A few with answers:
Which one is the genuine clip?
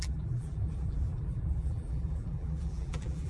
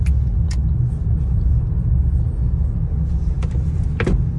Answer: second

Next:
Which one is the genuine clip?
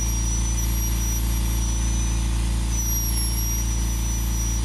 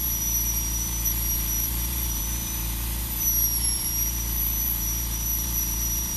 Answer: first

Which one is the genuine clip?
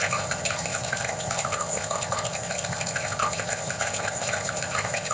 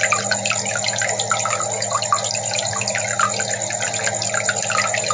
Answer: second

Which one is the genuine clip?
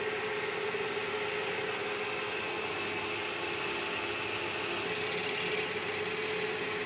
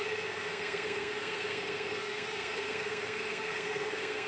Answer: first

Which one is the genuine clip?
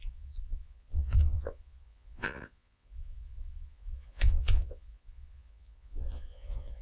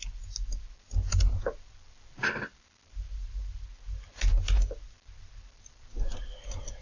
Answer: second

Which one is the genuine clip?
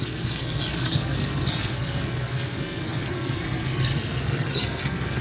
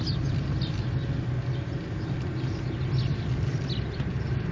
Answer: second